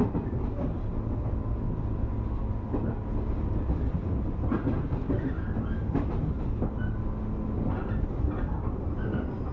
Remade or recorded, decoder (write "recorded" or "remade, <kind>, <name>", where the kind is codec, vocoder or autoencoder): recorded